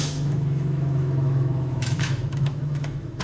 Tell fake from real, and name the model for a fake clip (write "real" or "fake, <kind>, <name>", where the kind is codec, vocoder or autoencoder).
fake, autoencoder, DAC-VAE